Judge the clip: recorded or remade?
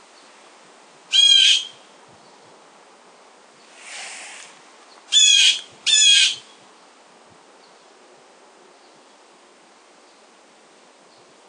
recorded